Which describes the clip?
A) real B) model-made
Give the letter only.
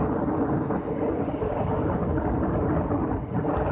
A